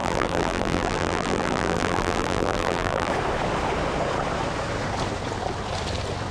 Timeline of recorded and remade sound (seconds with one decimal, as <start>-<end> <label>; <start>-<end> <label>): 0.0-3.1 remade; 3.1-6.3 recorded